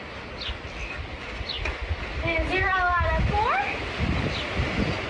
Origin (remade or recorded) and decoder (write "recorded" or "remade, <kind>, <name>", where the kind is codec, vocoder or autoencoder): recorded